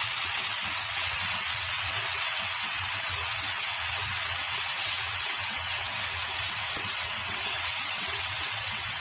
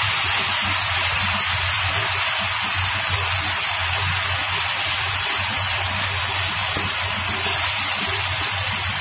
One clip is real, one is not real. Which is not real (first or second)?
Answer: first